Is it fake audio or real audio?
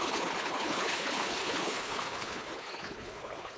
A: fake